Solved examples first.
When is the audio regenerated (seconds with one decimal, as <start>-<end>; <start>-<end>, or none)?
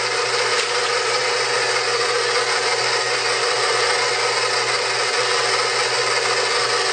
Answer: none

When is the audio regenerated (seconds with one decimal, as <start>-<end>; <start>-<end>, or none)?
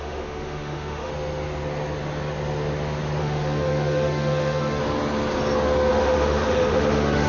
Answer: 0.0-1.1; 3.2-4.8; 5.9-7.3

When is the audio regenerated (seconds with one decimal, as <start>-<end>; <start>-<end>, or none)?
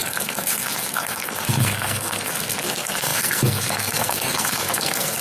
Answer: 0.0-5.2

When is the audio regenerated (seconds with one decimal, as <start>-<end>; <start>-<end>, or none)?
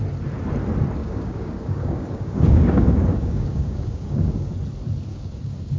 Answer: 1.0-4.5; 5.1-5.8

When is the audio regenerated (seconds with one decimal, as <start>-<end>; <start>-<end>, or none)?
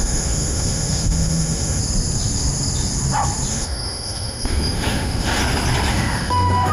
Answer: 0.0-1.8; 3.5-5.4; 5.9-6.7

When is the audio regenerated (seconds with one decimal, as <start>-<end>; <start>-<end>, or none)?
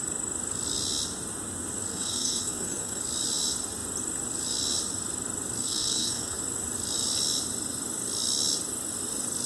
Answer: 1.9-3.0; 5.6-6.4